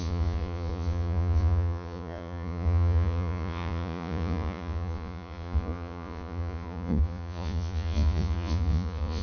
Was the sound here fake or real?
fake